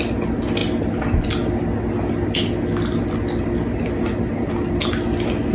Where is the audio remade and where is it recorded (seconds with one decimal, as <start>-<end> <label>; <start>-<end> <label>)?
0.0-5.5 recorded